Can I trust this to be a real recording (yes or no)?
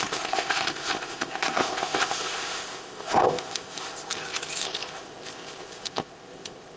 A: no